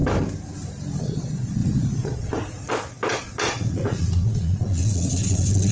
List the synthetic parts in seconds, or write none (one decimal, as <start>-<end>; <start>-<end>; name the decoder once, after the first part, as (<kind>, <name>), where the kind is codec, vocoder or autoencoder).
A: 1.0-5.7 (vocoder, Vocos)